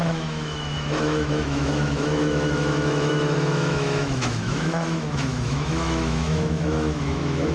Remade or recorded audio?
remade